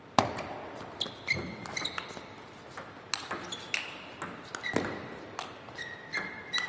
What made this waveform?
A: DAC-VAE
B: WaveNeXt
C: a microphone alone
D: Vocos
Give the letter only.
C